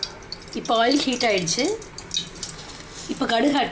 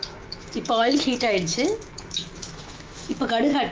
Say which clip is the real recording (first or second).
first